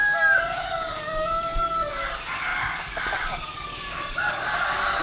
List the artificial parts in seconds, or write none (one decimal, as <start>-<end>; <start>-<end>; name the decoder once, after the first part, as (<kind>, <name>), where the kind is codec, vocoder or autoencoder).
0.0-5.0 (codec, DAC)